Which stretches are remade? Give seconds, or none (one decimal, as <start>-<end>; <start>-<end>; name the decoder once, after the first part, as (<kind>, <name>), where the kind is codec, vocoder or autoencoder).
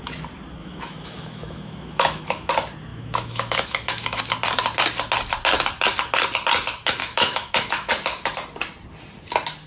0.6-2.5 (autoencoder, DAC-VAE); 2.9-4.2; 7.0-7.9